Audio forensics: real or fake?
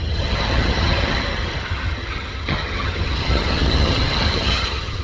fake